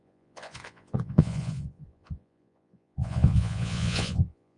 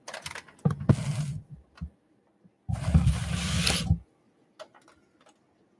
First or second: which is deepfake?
first